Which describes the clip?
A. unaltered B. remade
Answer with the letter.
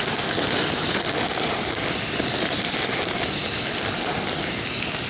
A